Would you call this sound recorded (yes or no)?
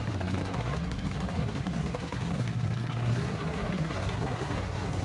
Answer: no